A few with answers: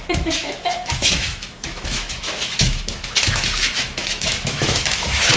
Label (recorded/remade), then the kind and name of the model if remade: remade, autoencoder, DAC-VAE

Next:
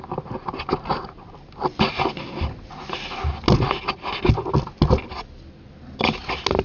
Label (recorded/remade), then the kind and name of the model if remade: recorded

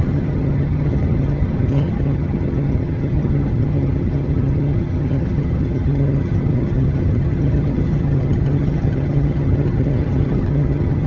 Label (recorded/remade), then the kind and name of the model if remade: remade, vocoder, HiFi-GAN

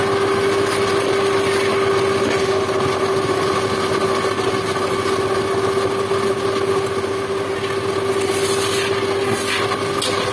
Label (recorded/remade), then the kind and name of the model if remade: recorded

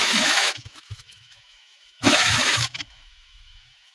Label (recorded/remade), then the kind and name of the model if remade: remade, autoencoder, DAC-VAE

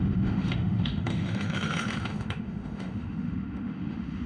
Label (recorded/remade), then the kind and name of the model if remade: remade, autoencoder, DAC-VAE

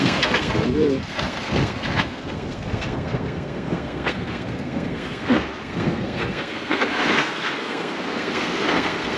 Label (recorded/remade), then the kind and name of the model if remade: remade, codec, SNAC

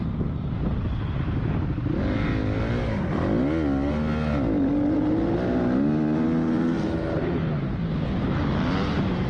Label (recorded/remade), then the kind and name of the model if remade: recorded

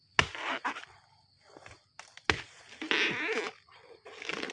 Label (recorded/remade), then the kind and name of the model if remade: recorded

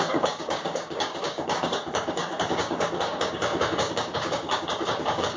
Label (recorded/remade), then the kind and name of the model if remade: remade, codec, DAC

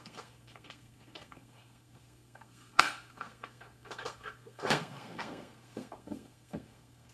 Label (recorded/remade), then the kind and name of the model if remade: remade, codec, SNAC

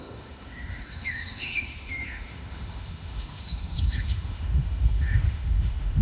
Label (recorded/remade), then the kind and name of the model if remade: remade, autoencoder, DAC-VAE